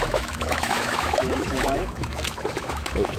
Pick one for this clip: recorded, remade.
remade